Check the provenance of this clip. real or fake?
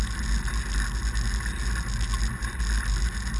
real